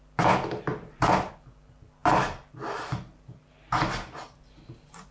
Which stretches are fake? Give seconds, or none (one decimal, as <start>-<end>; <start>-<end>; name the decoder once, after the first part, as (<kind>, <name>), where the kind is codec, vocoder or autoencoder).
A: none